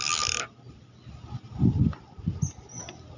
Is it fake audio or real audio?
real